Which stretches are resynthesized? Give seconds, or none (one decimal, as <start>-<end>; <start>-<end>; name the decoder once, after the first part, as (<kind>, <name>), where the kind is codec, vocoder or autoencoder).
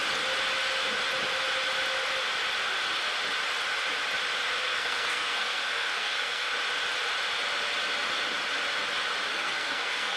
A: 4.6-6.5 (codec, SNAC); 9.3-10.2